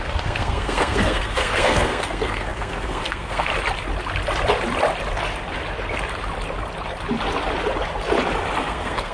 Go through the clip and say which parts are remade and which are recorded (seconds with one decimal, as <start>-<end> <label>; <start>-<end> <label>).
0.0-3.5 remade; 3.5-8.6 recorded; 8.6-9.1 remade

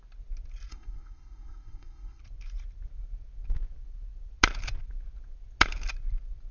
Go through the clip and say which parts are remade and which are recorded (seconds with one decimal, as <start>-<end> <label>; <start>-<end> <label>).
0.0-0.7 recorded; 0.7-2.2 remade; 2.2-6.5 recorded

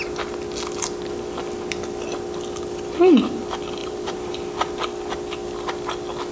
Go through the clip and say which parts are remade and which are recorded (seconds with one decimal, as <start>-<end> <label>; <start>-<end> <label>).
0.0-3.8 recorded; 3.8-4.3 remade; 4.3-6.3 recorded

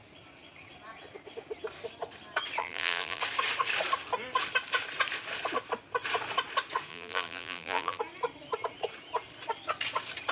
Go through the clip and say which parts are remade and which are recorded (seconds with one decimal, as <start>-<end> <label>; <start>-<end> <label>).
0.0-2.6 recorded; 2.6-3.2 remade; 3.2-6.9 recorded; 6.9-8.0 remade; 8.0-10.3 recorded

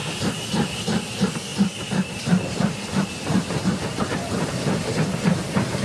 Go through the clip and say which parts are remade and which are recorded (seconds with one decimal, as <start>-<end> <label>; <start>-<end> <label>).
0.0-1.5 recorded; 1.5-4.3 remade; 4.3-5.8 recorded

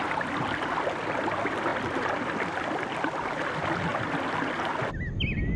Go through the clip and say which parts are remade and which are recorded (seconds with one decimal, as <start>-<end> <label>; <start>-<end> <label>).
0.0-5.6 recorded

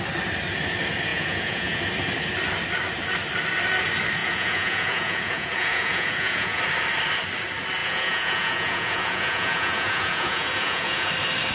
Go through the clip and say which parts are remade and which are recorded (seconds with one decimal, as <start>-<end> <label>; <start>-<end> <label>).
0.0-1.1 recorded; 1.1-1.8 remade; 1.8-4.2 recorded; 4.2-6.6 remade; 6.6-7.8 recorded; 7.8-11.1 remade; 11.1-11.5 recorded

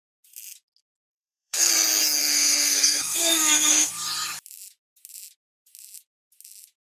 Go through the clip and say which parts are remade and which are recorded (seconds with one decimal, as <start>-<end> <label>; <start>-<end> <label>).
0.0-1.1 recorded; 1.1-1.7 remade; 1.7-2.2 recorded; 2.2-3.9 remade; 3.9-7.0 recorded